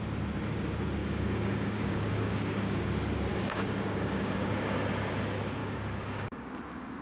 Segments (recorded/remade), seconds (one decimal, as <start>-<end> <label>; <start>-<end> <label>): 0.0-1.0 recorded; 1.0-2.9 remade; 2.9-3.3 recorded; 3.3-4.9 remade; 4.9-5.6 recorded; 5.6-6.5 remade; 6.5-7.0 recorded